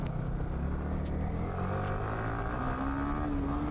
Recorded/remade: recorded